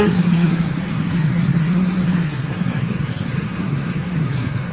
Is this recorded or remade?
remade